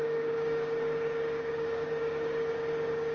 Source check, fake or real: fake